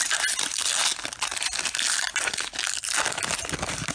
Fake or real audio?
real